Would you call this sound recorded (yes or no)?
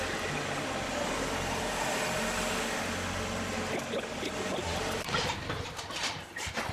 yes